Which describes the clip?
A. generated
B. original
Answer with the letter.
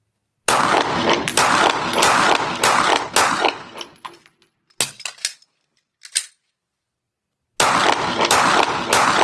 B